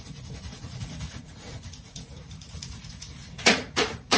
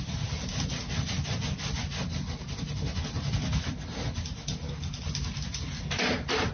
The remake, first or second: first